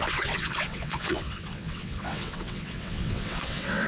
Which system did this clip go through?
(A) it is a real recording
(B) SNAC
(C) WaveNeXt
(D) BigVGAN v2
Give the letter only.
C